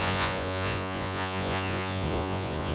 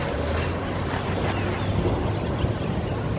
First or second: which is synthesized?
first